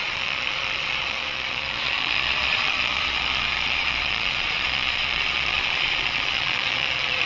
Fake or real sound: fake